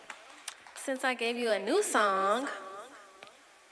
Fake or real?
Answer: fake